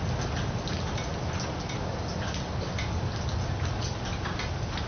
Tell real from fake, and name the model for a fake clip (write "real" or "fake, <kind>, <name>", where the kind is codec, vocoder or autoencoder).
real